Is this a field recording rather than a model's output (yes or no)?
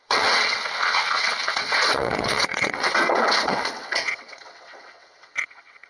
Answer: no